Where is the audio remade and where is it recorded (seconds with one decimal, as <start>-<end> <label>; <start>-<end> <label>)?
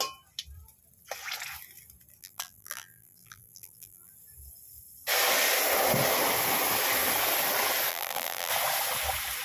0.0-2.2 recorded; 2.2-4.1 remade; 4.1-7.9 recorded; 7.9-8.5 remade; 8.5-9.4 recorded